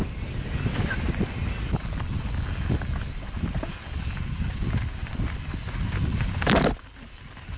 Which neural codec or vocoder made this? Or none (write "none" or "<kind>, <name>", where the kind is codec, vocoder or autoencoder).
none